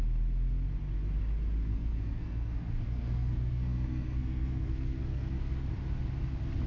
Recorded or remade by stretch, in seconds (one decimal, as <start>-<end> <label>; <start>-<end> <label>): 0.0-1.7 recorded; 1.7-5.7 remade; 5.7-6.7 recorded